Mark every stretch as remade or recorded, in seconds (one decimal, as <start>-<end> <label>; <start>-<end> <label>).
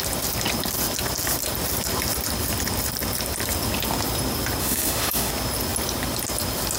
0.0-4.6 recorded; 4.6-5.3 remade; 5.3-6.8 recorded